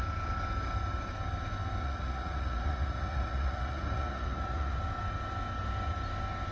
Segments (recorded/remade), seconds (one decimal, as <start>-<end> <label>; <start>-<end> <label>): 0.0-1.8 recorded; 1.8-4.8 remade; 4.8-6.5 recorded